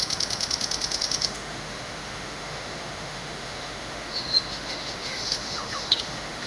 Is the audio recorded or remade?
remade